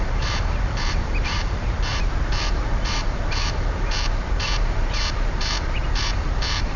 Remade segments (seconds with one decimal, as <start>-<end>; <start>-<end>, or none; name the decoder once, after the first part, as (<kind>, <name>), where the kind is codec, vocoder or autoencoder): 0.0-6.8 (vocoder, BigVGAN v2)